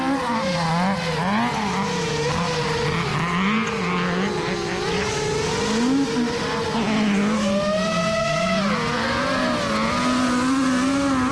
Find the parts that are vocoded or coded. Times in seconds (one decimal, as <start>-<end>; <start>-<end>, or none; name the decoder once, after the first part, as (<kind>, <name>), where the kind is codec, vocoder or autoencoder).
none